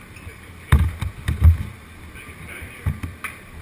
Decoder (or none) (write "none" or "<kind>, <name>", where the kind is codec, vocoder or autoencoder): vocoder, BigVGAN v2